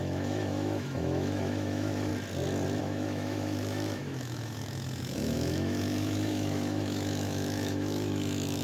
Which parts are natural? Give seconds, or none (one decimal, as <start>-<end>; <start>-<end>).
2.1-2.8